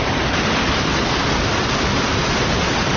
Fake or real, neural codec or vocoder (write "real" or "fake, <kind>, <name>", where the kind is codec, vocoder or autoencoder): real